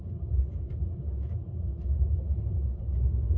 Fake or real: real